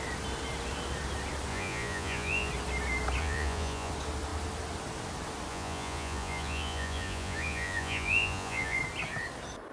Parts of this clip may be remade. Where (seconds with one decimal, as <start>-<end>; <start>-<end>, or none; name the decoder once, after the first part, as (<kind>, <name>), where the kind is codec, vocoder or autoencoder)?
1.5-2.5 (vocoder, Vocos); 3.2-3.9; 5.5-8.8

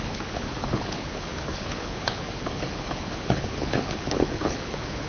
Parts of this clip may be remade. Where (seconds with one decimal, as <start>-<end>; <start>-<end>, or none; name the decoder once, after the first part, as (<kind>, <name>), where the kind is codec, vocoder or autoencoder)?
0.0-5.1 (codec, HILCodec)

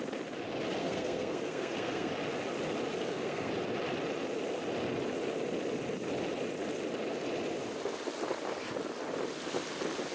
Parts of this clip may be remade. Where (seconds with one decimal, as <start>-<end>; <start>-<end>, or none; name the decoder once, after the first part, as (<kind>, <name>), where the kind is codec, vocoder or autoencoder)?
0.8-2.1 (codec, SNAC); 2.9-3.5

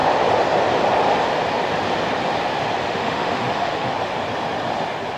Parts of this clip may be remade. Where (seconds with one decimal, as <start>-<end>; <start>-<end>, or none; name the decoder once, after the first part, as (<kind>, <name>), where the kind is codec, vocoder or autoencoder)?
2.8-3.9 (autoencoder, DAC-VAE)

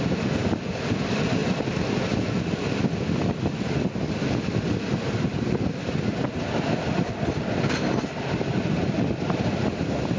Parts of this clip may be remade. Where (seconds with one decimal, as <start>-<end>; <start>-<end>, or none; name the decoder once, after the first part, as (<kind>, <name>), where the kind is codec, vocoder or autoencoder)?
none

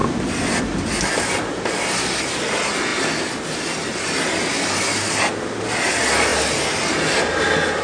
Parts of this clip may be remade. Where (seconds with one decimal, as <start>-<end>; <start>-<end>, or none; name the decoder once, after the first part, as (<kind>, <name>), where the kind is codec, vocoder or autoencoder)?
none

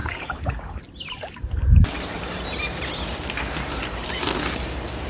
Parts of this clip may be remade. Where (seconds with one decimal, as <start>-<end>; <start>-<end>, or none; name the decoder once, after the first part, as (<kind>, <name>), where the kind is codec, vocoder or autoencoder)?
0.0-0.8 (codec, DAC)

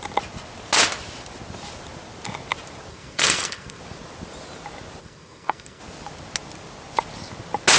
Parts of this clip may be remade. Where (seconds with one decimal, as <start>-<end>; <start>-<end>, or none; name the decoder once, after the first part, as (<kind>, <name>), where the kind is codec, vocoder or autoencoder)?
2.9-3.8 (codec, SNAC); 5.0-5.8